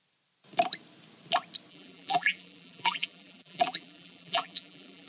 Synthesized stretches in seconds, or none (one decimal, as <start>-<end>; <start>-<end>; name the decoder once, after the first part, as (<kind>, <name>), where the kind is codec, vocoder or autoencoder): 1.7-5.1 (vocoder, BigVGAN v2)